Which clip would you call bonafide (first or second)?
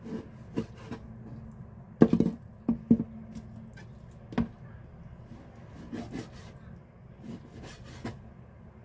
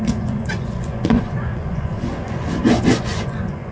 first